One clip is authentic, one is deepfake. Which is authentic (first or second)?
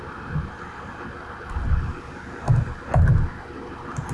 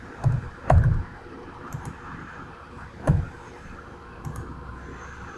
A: first